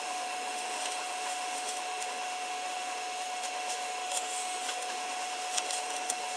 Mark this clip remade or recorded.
remade